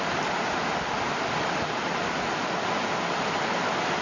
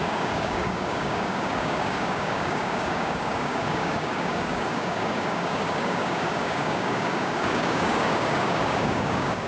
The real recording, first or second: first